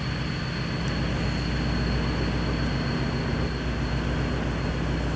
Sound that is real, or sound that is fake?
real